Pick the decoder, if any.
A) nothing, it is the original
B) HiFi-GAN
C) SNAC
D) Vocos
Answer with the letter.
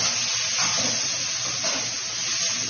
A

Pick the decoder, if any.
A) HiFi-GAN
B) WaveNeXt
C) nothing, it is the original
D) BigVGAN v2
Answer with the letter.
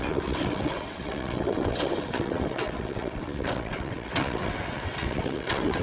B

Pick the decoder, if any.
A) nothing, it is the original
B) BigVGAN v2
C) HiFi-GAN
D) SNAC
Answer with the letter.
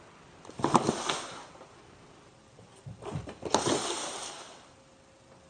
A